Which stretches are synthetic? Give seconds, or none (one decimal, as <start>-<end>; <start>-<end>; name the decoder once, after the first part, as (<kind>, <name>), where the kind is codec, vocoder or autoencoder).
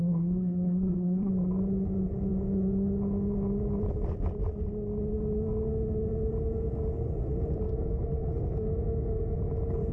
0.0-1.3 (codec, SNAC)